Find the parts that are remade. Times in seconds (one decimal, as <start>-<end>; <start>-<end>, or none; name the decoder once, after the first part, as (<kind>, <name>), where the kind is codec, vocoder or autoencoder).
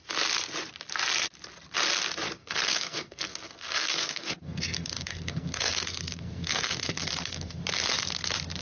2.4-7.6 (codec, SNAC)